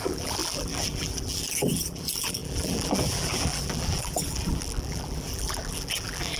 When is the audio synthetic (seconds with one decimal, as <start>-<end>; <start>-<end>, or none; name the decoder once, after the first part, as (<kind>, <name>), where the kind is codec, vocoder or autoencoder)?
0.0-6.4 (vocoder, BigVGAN v2)